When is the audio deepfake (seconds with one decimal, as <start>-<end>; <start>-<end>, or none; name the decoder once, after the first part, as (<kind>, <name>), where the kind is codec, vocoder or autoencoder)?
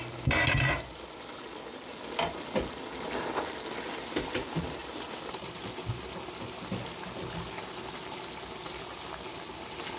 4.8-5.6 (vocoder, BigVGAN v2)